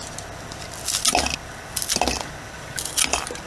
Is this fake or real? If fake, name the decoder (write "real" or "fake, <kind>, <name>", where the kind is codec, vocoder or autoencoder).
real